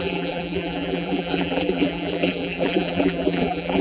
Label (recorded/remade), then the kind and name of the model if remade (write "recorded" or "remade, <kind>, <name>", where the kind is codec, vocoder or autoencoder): remade, vocoder, BigVGAN v2